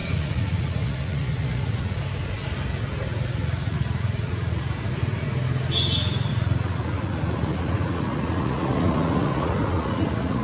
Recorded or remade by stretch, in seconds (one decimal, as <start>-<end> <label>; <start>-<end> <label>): 0.0-2.0 remade; 2.0-3.1 recorded; 3.1-4.7 remade; 4.7-6.3 recorded; 6.3-10.4 remade